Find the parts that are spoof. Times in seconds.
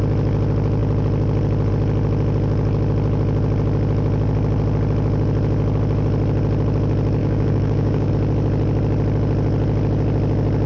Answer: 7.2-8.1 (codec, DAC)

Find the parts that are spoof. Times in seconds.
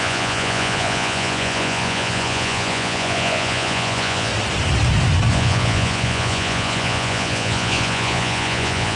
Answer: 0.0-4.3 (vocoder, Vocos); 5.3-9.0